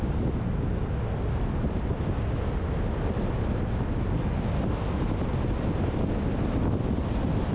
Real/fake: real